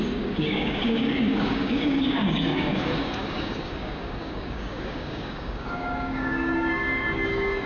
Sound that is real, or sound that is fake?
fake